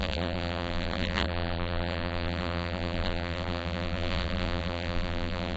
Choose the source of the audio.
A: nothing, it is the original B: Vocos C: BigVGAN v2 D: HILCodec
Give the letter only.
C